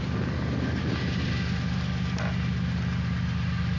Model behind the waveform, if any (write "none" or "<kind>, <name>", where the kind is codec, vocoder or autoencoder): none